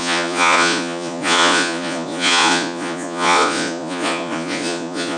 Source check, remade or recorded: remade